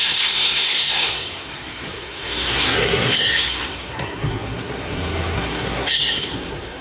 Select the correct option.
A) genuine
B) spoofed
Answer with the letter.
B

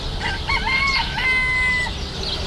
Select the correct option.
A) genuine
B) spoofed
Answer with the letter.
A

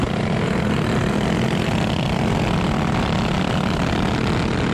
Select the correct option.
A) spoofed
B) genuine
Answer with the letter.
B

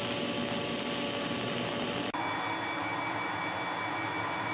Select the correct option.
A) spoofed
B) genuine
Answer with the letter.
B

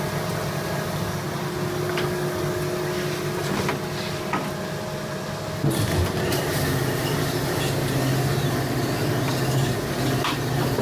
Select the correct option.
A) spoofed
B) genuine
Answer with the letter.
B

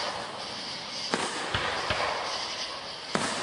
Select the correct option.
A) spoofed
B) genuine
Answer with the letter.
B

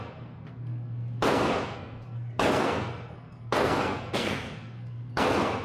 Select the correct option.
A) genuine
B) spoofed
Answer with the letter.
B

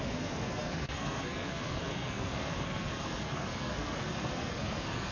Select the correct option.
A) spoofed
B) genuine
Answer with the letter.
A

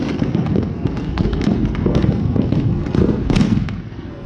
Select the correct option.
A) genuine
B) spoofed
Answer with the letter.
B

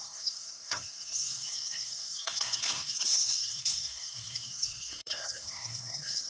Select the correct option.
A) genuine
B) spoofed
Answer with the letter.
B